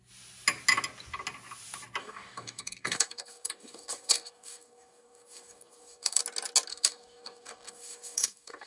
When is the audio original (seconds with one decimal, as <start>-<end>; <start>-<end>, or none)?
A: 0.0-2.0; 6.2-6.7